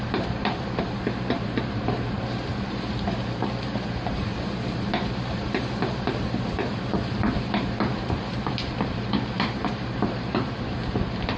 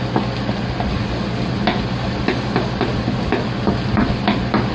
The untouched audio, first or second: second